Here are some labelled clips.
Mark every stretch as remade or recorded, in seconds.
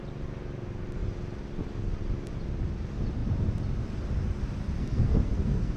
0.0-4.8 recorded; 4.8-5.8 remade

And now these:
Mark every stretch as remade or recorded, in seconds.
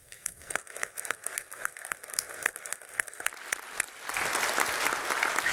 0.0-3.3 remade; 3.3-5.5 recorded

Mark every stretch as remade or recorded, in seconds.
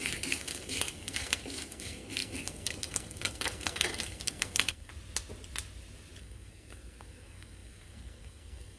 0.0-4.9 remade; 4.9-6.2 recorded; 6.2-8.8 remade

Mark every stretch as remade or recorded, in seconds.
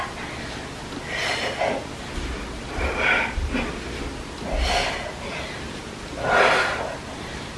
0.0-7.6 recorded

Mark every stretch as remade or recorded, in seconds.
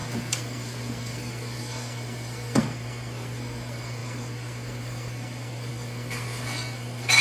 0.0-7.2 remade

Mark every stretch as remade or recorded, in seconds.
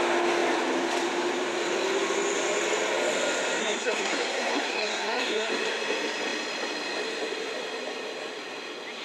0.0-3.6 recorded; 3.6-5.5 remade; 5.5-9.0 recorded